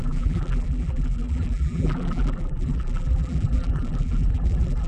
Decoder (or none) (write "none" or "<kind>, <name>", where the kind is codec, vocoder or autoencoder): vocoder, BigVGAN v2